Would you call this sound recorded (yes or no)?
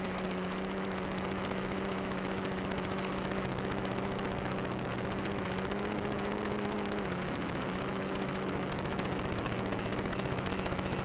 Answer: no